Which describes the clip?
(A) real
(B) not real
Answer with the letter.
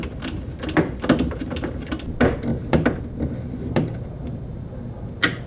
A